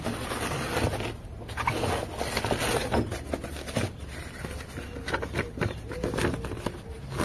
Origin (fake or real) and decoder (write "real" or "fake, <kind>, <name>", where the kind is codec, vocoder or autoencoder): real